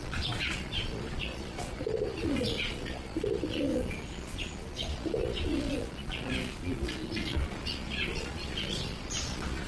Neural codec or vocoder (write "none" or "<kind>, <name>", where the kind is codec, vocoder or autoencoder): vocoder, Vocos